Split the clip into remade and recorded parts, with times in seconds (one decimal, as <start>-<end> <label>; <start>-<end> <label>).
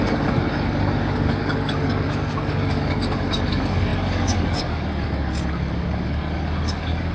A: 0.0-7.1 remade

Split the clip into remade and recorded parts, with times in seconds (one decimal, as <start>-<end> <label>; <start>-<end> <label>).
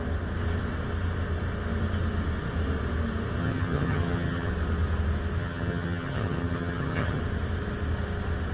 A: 0.0-3.4 recorded; 3.4-4.5 remade; 4.5-5.4 recorded; 5.4-7.2 remade; 7.2-8.5 recorded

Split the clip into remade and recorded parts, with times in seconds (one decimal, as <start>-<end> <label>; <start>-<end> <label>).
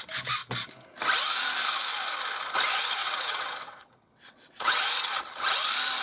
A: 0.0-3.0 recorded; 3.0-4.8 remade; 4.8-6.0 recorded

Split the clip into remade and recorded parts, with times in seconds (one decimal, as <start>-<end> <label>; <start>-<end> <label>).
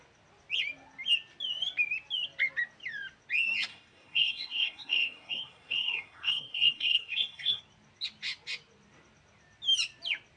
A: 0.0-3.7 recorded; 3.7-7.6 remade; 7.6-10.4 recorded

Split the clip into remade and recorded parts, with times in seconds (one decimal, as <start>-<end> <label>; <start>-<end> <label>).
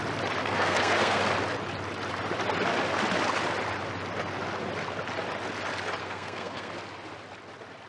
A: 0.0-0.4 recorded; 0.4-1.2 remade; 1.2-6.0 recorded; 6.0-6.7 remade; 6.7-7.9 recorded